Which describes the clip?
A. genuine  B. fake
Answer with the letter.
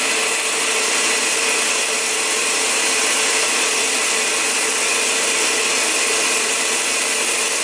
A